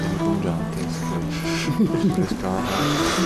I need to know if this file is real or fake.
real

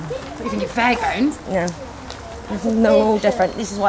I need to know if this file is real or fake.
real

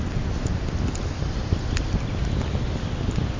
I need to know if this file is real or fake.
real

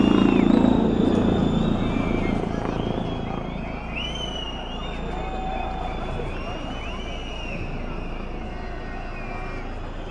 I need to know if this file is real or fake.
real